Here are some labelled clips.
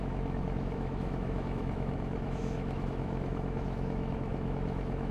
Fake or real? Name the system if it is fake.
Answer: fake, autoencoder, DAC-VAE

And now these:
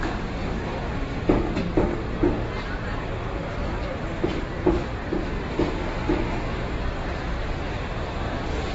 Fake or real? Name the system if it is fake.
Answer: real